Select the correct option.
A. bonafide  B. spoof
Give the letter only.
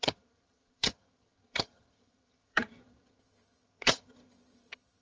B